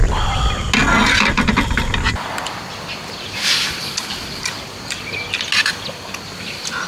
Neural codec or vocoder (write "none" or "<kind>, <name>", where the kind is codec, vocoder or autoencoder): none